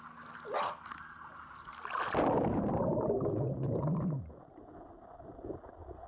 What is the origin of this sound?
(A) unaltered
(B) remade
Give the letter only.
A